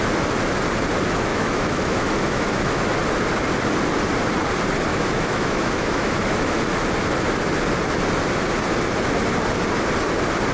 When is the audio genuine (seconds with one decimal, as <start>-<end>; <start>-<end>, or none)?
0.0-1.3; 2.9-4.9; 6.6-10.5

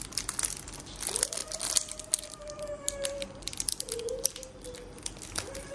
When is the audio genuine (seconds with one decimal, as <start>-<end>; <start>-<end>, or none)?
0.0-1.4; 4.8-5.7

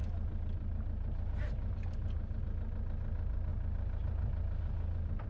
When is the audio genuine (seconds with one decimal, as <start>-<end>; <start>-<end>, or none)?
2.4-3.5